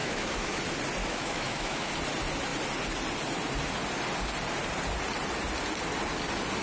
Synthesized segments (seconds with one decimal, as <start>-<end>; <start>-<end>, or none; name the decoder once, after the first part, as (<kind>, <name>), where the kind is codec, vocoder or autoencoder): 0.0-0.6 (autoencoder, DAC-VAE); 1.0-1.9